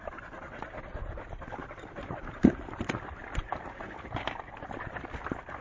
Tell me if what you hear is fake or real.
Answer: real